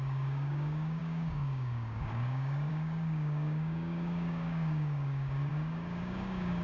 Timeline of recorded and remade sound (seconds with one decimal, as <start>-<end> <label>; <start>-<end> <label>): 0.0-6.6 remade